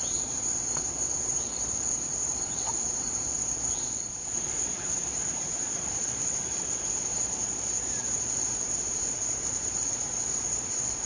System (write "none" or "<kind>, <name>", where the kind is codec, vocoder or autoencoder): vocoder, Vocos